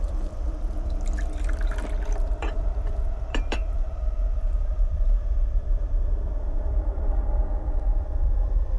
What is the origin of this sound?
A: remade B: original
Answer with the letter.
A